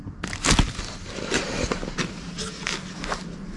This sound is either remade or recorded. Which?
recorded